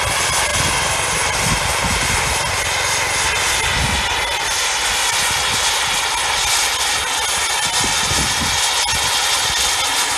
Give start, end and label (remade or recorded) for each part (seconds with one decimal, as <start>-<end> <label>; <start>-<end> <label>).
0.0-10.2 recorded